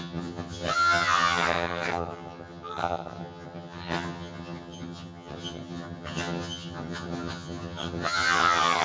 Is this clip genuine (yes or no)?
no